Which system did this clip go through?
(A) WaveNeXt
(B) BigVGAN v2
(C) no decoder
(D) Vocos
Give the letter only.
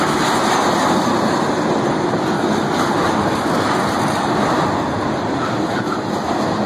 C